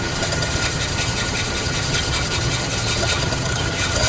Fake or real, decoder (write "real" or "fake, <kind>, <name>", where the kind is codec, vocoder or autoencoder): fake, vocoder, HiFi-GAN